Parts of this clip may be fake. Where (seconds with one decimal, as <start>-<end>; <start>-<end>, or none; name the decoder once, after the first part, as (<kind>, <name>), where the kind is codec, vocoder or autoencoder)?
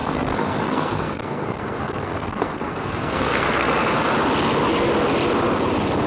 0.0-3.7 (codec, SNAC)